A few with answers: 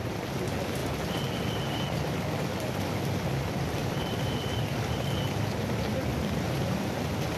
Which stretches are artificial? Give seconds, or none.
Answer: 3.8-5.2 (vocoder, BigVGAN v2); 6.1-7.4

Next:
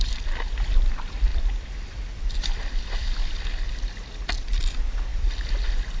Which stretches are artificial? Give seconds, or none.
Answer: 0.0-6.0 (vocoder, BigVGAN v2)